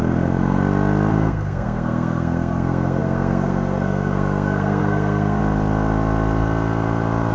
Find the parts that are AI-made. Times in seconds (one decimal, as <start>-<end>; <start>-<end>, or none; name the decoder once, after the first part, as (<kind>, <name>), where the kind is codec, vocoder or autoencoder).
0.0-0.6 (codec, SNAC); 1.1-5.4